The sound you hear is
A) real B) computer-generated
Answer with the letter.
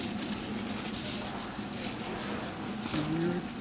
A